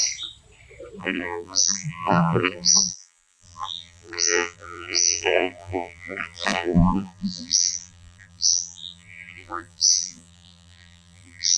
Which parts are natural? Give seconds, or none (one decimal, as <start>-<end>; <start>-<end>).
0.0-1.0